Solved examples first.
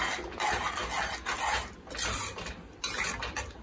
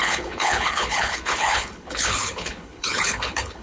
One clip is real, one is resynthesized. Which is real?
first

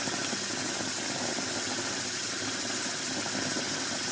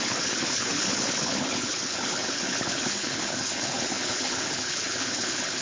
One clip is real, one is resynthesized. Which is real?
first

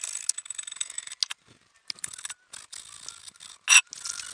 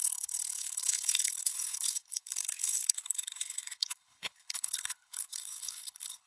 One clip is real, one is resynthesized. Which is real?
first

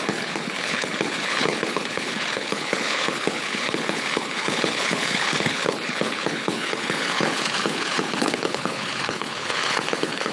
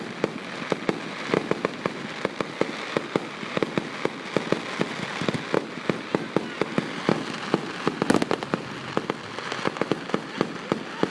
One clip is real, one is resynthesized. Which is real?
second